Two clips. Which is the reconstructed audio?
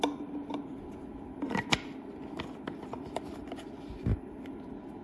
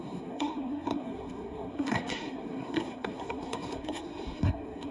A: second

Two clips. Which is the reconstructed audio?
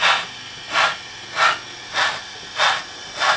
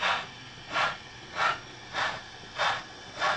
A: second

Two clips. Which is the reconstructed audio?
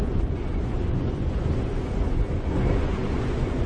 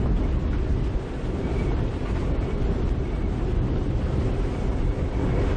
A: first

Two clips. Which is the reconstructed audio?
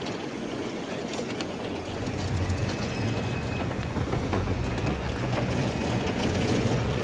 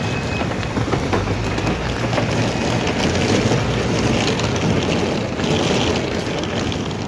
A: first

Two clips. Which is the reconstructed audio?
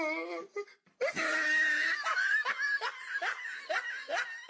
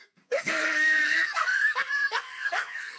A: second